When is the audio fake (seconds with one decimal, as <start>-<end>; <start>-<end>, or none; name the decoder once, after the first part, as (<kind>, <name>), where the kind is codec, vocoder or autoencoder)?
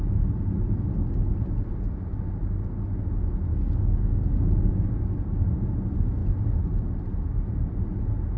3.5-4.7 (codec, DAC)